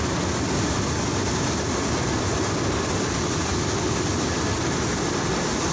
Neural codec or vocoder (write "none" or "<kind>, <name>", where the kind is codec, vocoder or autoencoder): none